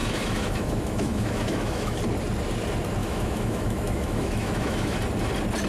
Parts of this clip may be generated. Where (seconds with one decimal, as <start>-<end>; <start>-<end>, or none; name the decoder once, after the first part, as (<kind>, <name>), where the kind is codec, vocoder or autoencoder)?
0.0-2.0 (autoencoder, DAC-VAE); 3.0-5.0